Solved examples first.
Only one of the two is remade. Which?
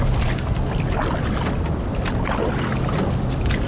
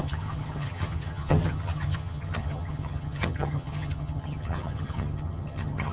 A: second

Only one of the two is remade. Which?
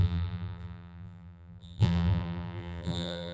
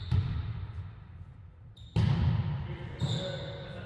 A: first